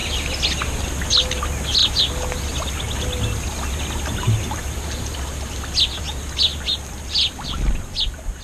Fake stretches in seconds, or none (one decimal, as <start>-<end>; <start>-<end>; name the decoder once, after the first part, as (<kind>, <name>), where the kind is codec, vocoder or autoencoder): none